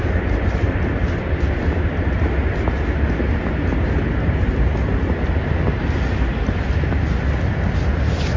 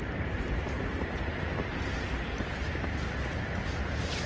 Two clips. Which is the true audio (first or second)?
first